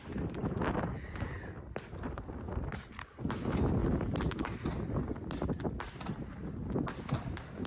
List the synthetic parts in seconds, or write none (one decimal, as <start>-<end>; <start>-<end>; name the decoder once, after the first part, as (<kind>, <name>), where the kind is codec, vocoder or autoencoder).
none